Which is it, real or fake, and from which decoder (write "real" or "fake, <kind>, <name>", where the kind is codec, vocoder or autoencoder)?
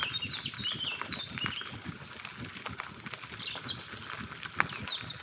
real